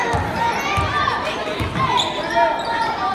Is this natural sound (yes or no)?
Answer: yes